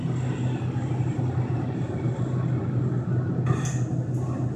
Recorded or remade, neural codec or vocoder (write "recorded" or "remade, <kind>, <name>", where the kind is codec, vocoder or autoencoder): recorded